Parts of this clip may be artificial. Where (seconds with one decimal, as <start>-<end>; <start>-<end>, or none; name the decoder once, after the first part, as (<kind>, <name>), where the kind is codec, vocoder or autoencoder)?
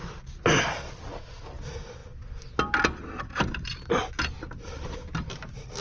none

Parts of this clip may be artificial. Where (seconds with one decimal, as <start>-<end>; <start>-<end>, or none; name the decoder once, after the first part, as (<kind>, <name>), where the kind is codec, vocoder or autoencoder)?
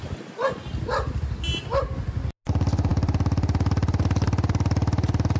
none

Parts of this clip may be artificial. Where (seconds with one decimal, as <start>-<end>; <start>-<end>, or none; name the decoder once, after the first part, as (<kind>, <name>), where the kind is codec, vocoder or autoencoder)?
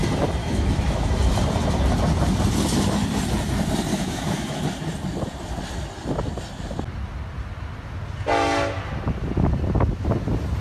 0.4-1.2 (autoencoder, DAC-VAE); 3.9-4.6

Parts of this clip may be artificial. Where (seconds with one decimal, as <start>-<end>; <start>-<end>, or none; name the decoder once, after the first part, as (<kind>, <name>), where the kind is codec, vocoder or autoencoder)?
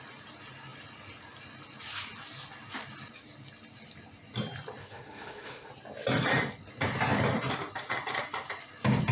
4.8-5.7 (autoencoder, DAC-VAE)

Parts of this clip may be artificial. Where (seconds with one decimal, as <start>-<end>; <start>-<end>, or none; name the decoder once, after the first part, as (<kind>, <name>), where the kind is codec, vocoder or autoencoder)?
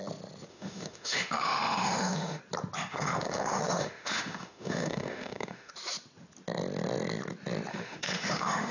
0.5-2.4 (autoencoder, DAC-VAE); 2.9-5.7; 7.7-8.7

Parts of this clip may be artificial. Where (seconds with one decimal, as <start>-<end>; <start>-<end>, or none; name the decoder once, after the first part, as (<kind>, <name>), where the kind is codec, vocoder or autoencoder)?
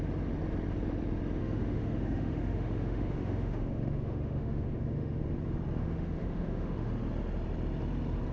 1.4-5.2 (autoencoder, DAC-VAE); 5.8-6.9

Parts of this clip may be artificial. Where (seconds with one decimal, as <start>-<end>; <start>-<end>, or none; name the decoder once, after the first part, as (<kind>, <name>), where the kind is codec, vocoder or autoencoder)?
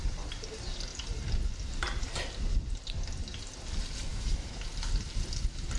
4.1-4.6 (autoencoder, DAC-VAE)